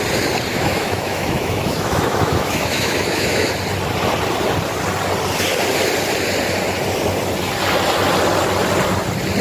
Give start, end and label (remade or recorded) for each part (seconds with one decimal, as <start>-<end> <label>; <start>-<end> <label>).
0.0-0.5 recorded; 0.5-3.5 remade; 3.5-9.4 recorded